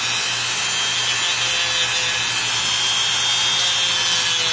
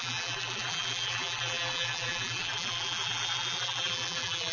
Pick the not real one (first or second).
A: second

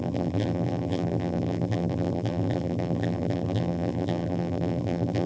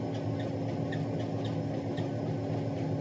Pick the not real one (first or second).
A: first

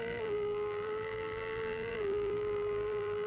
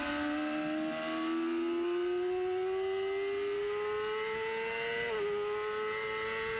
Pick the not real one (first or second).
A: first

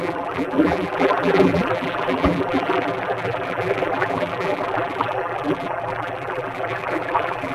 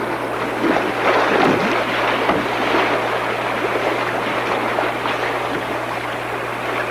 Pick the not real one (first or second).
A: first